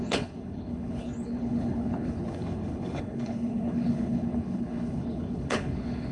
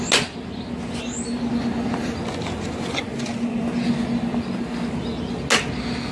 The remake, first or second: first